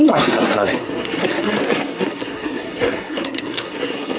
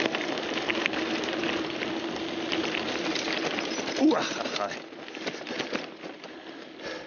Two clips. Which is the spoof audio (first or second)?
first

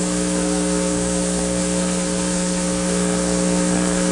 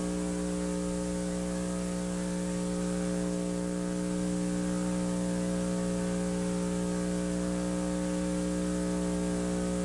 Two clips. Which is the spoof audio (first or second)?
first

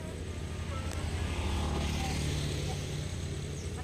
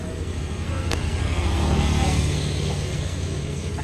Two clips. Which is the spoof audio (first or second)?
second